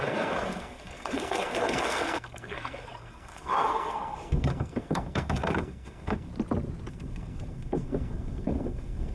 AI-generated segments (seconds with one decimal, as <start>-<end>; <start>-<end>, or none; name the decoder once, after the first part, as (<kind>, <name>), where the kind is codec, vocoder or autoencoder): 0.0-6.3 (codec, SNAC); 6.9-9.1